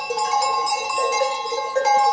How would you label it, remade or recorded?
recorded